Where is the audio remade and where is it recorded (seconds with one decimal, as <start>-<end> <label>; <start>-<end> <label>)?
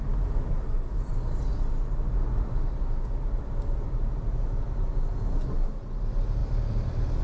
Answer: 0.0-6.4 recorded; 6.4-7.2 remade